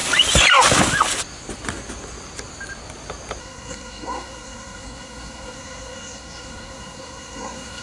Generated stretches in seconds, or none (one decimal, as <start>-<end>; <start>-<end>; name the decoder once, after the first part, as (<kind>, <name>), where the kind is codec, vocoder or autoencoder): 3.4-7.8 (codec, SNAC)